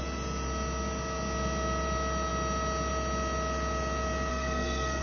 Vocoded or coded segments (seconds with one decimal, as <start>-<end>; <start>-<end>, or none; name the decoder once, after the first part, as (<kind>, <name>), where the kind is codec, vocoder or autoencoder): 4.3-5.0 (codec, SNAC)